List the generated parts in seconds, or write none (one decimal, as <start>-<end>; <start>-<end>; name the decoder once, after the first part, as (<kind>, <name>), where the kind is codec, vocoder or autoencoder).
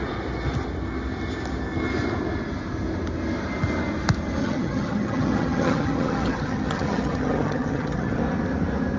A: 4.4-8.2 (vocoder, HiFi-GAN)